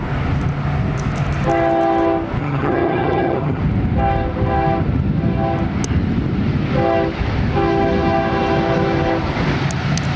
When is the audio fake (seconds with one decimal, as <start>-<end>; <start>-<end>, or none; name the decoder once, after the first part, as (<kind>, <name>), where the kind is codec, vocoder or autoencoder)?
2.4-3.6 (vocoder, HiFi-GAN)